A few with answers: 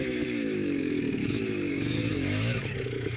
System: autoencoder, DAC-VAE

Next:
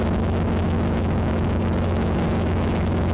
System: autoencoder, DAC-VAE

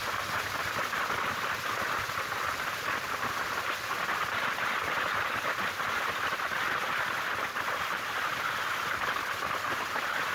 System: none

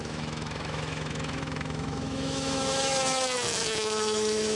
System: autoencoder, DAC-VAE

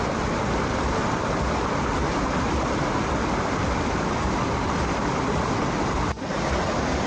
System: none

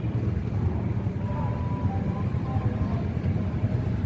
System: none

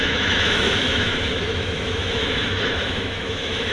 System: autoencoder, DAC-VAE